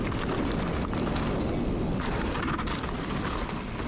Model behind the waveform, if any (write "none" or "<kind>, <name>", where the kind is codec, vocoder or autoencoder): none